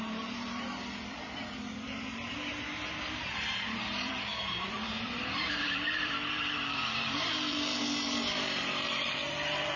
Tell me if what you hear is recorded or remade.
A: remade